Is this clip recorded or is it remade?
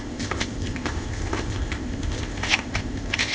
remade